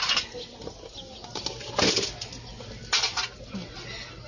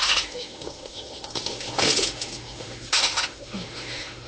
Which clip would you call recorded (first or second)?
first